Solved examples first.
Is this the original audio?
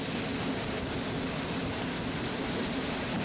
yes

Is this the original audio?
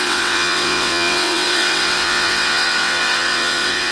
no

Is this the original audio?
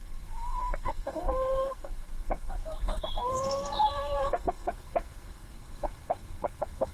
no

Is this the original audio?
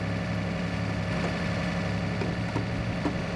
yes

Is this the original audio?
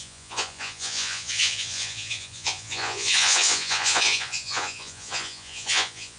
no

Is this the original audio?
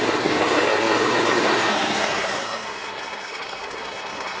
no